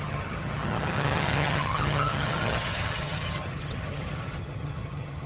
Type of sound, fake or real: fake